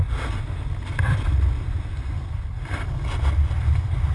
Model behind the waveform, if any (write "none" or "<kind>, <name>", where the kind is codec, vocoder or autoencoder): none